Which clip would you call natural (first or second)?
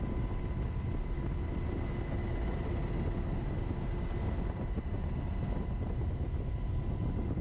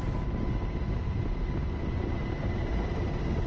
first